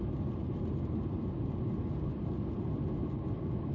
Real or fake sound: real